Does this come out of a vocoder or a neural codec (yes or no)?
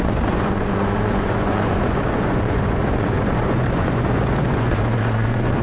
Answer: yes